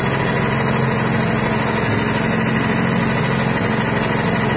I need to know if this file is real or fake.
real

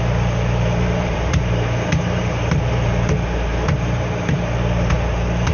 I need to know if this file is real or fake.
fake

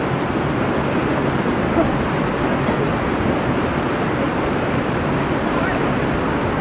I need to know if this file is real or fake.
real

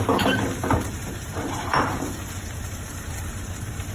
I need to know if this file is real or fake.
fake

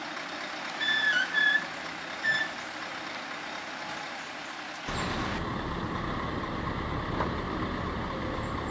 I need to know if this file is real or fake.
real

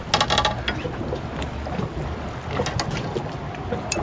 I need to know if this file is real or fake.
real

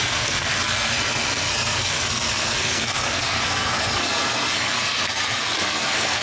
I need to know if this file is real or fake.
fake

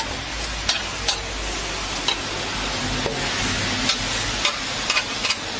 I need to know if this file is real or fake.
real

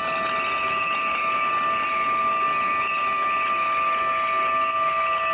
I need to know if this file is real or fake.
real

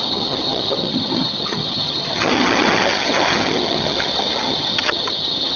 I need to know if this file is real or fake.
fake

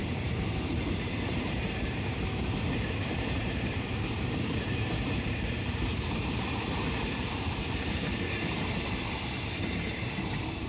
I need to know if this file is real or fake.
fake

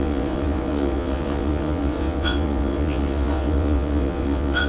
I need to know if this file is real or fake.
fake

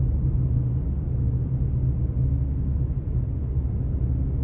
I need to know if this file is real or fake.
real